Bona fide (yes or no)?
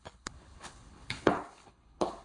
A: no